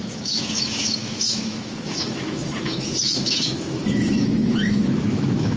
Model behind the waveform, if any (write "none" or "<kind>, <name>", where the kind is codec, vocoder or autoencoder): autoencoder, DAC-VAE